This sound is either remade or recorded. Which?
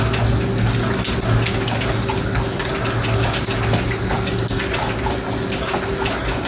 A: recorded